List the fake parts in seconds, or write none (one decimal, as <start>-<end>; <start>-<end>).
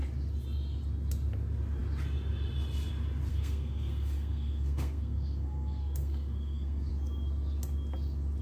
3.3-6.9